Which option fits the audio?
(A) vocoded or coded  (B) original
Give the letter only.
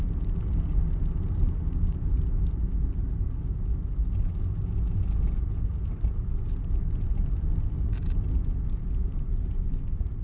B